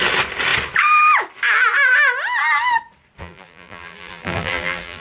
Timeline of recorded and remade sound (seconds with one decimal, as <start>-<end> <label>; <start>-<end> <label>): 0.0-3.2 recorded; 3.2-5.0 remade